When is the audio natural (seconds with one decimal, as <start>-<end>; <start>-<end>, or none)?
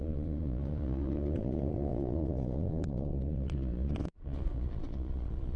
none